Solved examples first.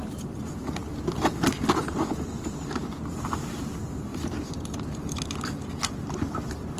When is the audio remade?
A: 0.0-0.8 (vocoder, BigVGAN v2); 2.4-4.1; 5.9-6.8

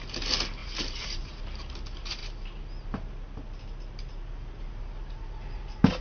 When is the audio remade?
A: 0.6-1.4 (vocoder, BigVGAN v2)

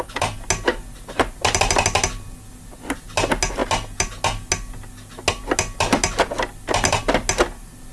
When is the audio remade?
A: none

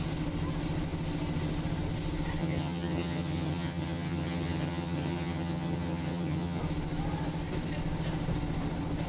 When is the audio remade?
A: 2.4-6.6 (vocoder, HiFi-GAN)